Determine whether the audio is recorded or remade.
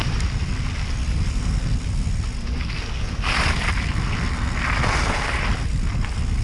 recorded